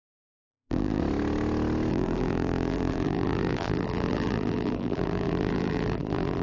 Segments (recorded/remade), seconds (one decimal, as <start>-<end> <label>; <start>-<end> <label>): 0.0-1.0 remade; 1.0-1.9 recorded; 1.9-6.4 remade